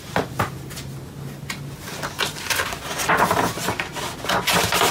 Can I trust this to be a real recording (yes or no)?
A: yes